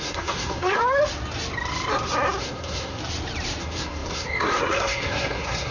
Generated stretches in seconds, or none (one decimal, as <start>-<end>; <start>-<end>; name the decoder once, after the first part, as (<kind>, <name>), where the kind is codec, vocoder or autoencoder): 0.0-0.8 (codec, SNAC); 2.4-3.0; 3.6-5.7